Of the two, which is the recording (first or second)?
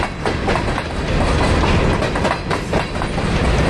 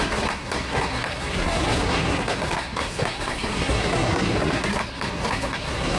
first